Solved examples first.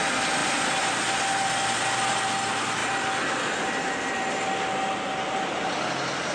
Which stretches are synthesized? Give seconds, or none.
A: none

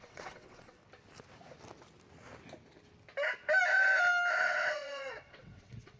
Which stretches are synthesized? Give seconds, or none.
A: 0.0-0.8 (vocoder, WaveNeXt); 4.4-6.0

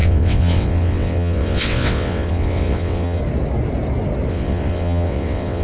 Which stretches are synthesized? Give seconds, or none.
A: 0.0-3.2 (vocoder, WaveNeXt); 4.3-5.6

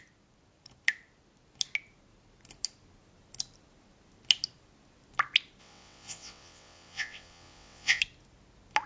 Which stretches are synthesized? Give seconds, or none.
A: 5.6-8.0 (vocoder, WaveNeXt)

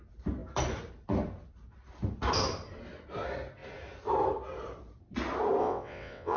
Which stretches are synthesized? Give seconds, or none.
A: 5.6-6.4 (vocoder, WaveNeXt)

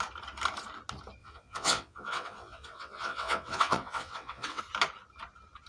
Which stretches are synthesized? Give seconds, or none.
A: 1.2-4.6 (vocoder, WaveNeXt)